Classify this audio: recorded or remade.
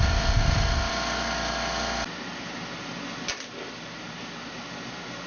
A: recorded